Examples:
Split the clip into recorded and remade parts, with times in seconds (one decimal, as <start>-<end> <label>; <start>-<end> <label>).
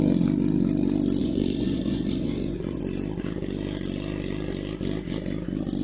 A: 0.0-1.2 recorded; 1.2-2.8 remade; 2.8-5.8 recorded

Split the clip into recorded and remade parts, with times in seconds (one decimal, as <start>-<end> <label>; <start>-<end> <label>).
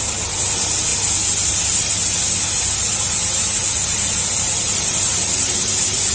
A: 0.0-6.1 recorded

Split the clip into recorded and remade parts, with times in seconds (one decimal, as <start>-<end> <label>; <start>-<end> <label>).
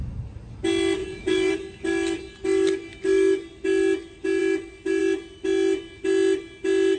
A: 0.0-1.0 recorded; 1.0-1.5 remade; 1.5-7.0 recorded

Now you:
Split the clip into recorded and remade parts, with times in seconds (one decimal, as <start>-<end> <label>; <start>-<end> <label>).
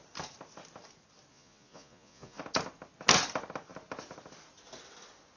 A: 0.0-1.3 recorded; 1.3-2.4 remade; 2.4-5.4 recorded